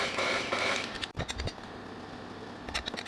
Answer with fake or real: real